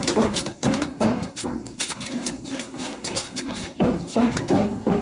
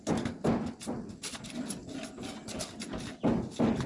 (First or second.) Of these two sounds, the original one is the second